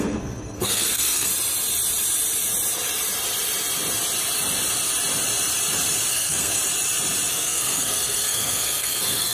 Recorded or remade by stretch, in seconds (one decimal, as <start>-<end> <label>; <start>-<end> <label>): 0.0-1.3 remade; 1.3-6.1 recorded; 6.1-6.6 remade; 6.6-7.3 recorded; 7.3-9.3 remade